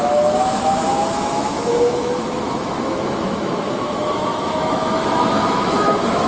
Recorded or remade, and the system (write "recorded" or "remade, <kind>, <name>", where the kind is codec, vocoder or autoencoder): remade, autoencoder, DAC-VAE